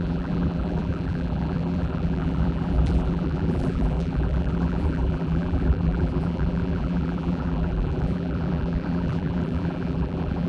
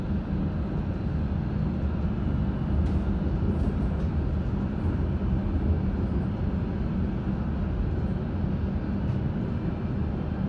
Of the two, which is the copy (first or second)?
first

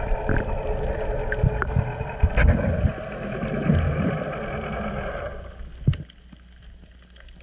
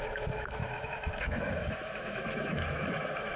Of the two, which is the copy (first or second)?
second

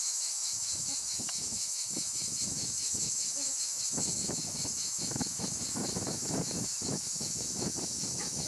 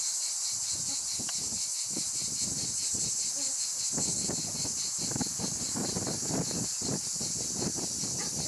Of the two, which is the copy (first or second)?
first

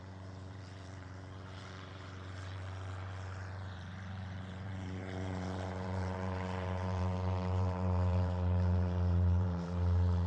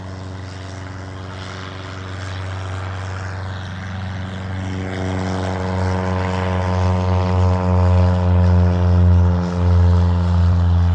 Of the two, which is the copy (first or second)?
first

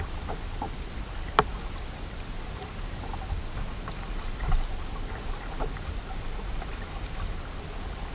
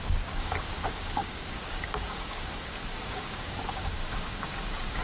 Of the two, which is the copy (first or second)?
second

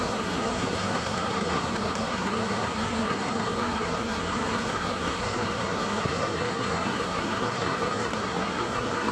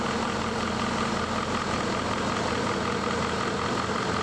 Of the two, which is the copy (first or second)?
first